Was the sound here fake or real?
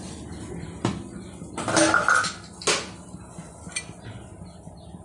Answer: real